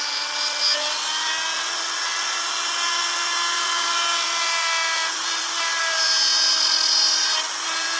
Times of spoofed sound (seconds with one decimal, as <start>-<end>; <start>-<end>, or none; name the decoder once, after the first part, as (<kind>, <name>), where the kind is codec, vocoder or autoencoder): none

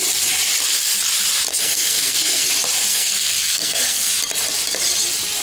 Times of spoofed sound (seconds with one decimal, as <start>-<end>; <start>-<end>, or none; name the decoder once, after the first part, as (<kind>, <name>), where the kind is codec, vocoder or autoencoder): 1.5-2.5 (codec, SNAC); 2.9-4.2

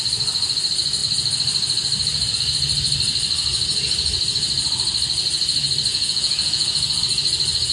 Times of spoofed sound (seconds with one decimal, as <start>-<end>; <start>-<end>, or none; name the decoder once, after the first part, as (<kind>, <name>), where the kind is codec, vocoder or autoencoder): 5.9-7.0 (vocoder, Vocos)

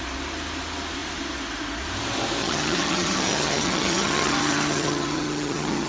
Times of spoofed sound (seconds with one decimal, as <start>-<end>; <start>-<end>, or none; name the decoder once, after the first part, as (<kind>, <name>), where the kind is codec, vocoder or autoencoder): 2.4-5.9 (vocoder, HiFi-GAN)

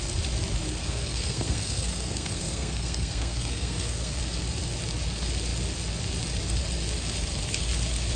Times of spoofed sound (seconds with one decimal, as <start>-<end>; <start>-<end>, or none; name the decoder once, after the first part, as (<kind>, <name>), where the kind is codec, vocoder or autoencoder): 0.8-4.2 (codec, SNAC)

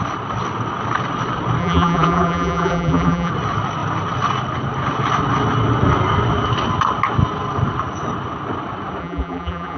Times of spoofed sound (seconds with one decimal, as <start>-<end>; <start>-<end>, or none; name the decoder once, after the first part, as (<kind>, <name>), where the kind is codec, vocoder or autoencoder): 1.6-3.3 (vocoder, BigVGAN v2); 9.0-9.8